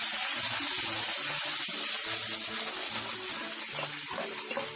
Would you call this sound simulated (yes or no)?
no